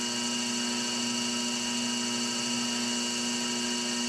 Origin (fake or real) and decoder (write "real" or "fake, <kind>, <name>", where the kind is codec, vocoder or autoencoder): real